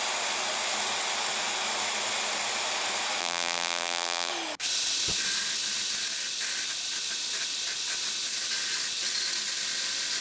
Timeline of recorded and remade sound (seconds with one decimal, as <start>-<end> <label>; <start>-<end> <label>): 0.0-3.2 recorded; 3.2-4.3 remade; 4.3-10.2 recorded